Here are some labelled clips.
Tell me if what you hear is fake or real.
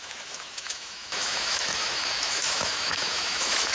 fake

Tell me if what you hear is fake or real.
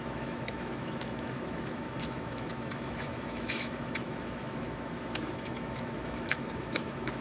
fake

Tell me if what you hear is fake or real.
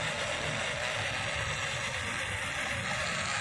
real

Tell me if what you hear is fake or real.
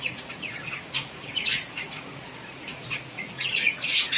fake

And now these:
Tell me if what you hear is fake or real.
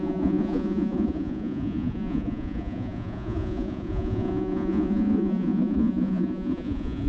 fake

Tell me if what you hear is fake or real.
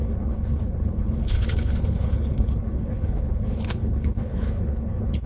fake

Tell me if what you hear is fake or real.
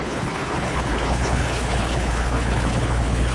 fake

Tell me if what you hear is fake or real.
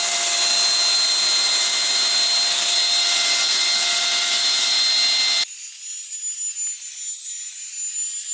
real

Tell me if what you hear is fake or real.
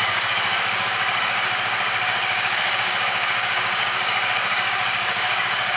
fake